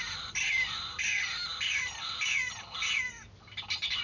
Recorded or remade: recorded